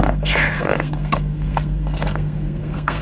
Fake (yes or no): yes